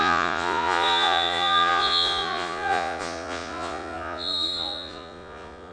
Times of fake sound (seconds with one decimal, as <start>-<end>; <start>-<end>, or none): 0.0-5.7